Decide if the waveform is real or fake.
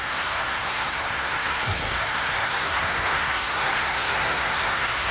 fake